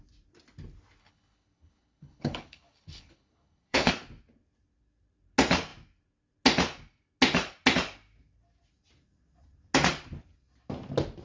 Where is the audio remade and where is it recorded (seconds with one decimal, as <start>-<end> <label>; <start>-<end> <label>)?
0.0-1.0 recorded; 1.0-3.9 remade; 3.9-11.2 recorded